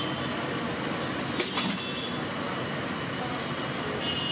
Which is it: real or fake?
real